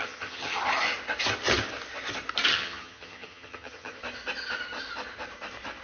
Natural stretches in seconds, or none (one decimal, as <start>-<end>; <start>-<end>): 0.6-2.5; 4.0-5.8